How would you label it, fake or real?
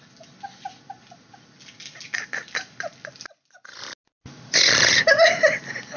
real